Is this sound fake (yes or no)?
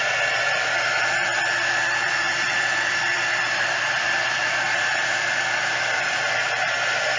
yes